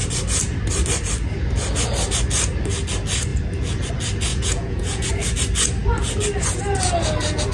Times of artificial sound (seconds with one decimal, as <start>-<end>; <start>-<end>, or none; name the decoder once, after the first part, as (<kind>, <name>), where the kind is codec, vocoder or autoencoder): 4.3-5.1 (vocoder, Vocos)